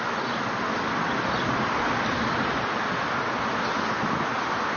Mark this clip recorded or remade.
recorded